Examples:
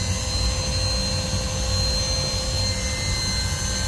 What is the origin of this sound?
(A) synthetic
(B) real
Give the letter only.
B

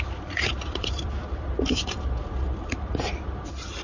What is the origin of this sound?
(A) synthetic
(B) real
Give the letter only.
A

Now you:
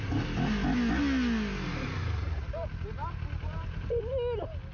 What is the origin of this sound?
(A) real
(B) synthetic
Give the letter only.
A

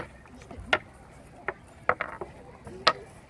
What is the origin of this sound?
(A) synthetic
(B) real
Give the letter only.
B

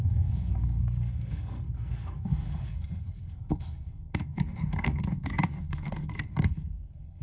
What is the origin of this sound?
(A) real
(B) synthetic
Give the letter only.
B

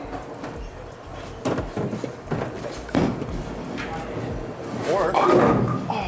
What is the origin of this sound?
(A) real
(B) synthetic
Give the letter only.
A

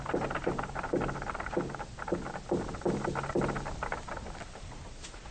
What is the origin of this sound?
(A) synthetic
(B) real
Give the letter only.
B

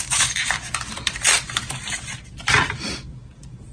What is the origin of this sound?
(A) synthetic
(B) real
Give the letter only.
B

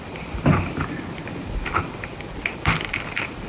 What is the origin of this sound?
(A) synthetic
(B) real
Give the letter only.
B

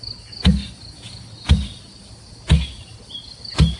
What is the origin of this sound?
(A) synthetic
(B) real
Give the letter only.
B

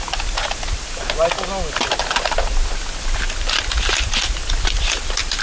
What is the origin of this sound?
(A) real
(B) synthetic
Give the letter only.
B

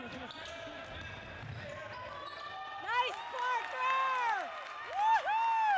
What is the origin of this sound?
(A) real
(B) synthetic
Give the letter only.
A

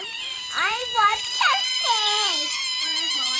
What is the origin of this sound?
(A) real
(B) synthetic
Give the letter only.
B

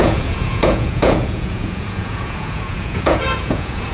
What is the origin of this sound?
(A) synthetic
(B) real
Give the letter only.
A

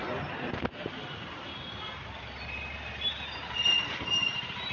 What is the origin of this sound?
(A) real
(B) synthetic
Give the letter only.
A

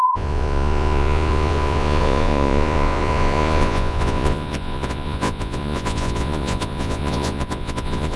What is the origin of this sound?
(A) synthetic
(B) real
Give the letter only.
A